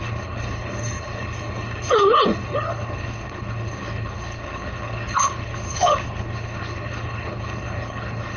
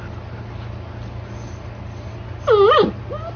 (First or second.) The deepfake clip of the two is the first